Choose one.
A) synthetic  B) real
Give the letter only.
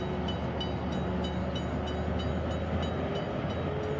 B